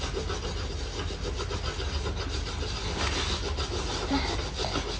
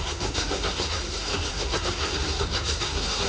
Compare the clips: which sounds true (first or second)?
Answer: first